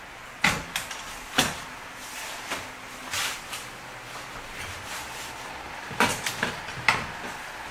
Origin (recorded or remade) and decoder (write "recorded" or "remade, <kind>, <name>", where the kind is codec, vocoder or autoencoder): recorded